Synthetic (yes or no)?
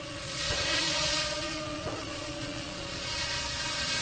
yes